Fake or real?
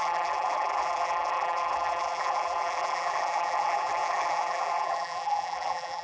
fake